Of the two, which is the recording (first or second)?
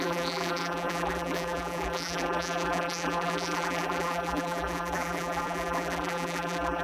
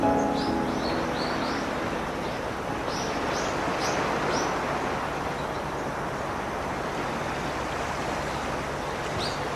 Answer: second